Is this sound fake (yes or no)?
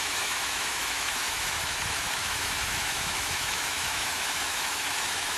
yes